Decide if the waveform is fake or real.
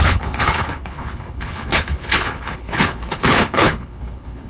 fake